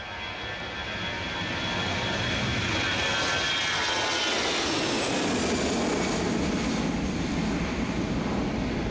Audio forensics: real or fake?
real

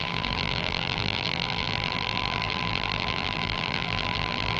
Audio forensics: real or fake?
fake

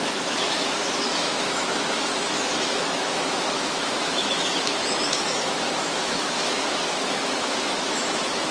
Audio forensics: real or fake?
fake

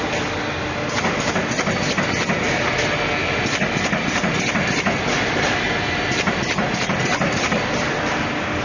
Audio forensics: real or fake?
real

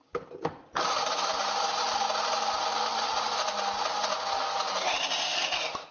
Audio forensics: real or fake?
real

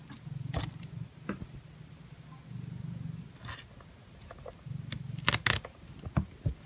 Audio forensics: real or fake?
real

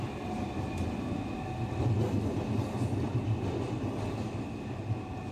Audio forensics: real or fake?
real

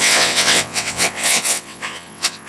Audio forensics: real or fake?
fake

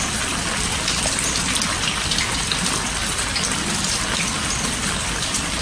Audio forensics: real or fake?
real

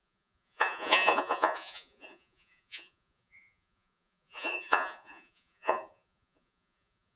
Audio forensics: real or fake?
fake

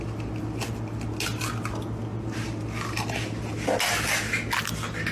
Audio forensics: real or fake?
real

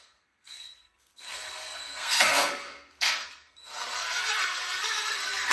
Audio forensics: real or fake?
fake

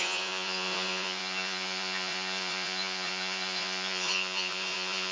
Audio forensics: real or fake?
fake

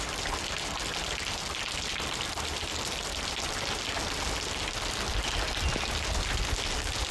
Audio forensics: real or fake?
real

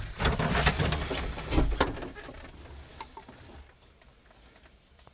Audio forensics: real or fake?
real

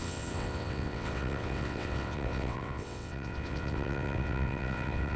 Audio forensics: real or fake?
fake